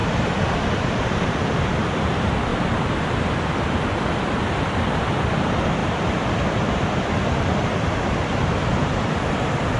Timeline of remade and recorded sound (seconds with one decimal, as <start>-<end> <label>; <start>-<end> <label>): 0.0-2.5 remade; 2.5-3.8 recorded; 3.8-9.8 remade